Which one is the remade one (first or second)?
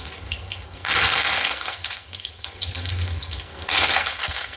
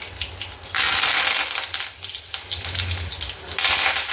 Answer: first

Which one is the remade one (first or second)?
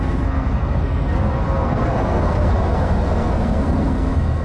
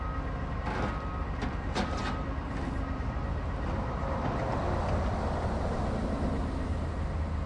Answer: first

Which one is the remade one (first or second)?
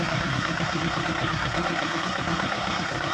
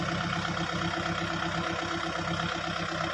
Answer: first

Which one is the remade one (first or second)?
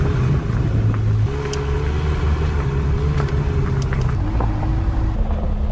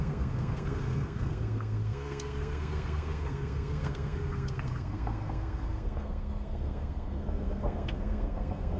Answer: second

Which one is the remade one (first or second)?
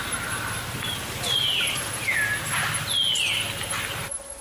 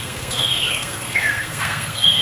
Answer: second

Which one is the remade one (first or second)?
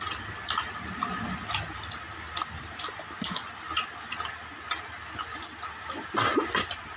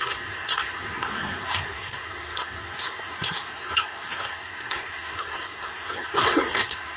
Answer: second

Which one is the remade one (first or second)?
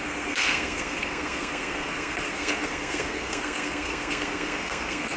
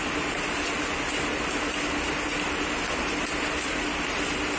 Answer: first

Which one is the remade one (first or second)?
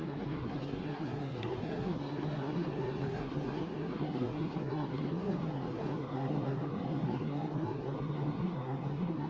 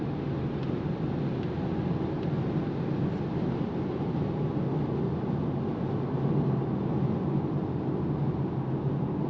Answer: first